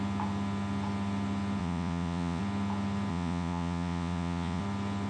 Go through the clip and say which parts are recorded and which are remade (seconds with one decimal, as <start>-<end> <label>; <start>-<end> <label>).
0.0-1.6 recorded; 1.6-2.4 remade; 2.4-3.1 recorded; 3.1-4.6 remade; 4.6-5.1 recorded